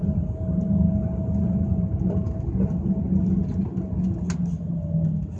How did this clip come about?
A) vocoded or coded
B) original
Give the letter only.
B